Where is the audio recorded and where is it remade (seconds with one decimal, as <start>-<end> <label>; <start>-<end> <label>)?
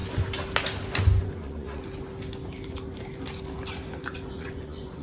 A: 0.0-1.2 recorded; 1.2-1.8 remade; 1.8-4.4 recorded; 4.4-5.0 remade